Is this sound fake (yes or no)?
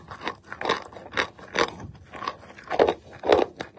no